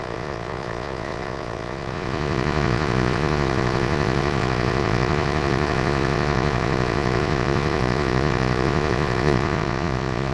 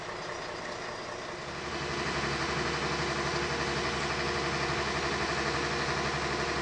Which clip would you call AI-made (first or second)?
first